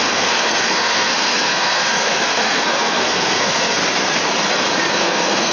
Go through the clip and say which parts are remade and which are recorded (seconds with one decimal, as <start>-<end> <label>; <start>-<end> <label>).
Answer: 0.0-3.8 remade; 3.8-4.9 recorded; 4.9-5.5 remade